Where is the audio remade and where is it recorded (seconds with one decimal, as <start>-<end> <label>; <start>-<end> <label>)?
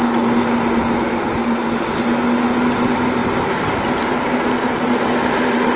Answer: 0.0-5.8 recorded